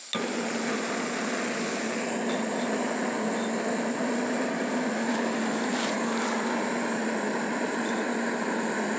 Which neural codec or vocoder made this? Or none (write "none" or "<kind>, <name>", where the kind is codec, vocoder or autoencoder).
none